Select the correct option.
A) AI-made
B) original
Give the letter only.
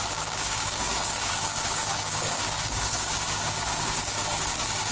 A